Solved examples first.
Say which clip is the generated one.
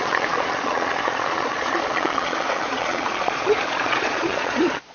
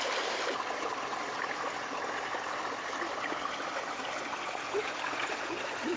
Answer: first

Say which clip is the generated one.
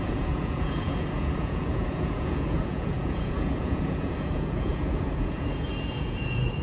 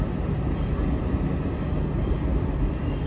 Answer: first